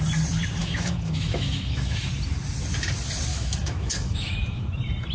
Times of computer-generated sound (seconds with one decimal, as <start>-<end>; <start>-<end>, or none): 0.6-2.1; 3.3-4.6